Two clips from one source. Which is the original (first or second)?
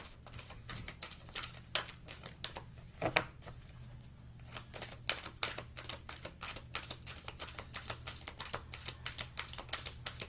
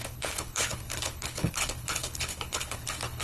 first